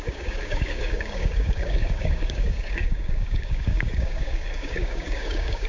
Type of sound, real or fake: fake